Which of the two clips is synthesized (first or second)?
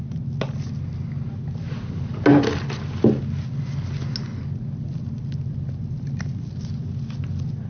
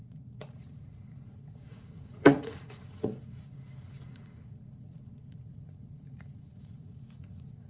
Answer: second